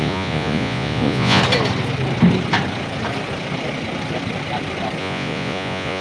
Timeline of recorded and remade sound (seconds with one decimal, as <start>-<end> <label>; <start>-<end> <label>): 0.0-1.4 remade; 1.4-5.0 recorded; 5.0-6.0 remade